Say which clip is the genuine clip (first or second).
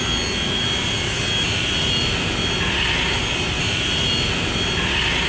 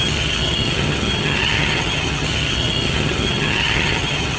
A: first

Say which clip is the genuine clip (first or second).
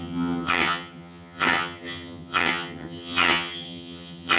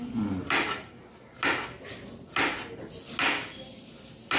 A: second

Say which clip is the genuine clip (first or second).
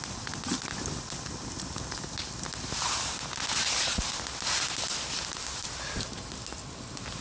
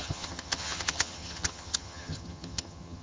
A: first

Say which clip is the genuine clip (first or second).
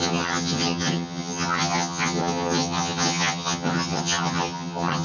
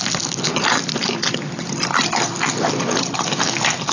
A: second